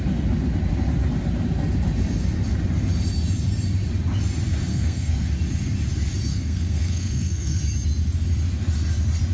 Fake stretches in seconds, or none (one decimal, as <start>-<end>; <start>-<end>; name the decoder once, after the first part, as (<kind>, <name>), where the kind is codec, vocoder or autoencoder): 4.7-5.3 (codec, SNAC); 6.3-7.6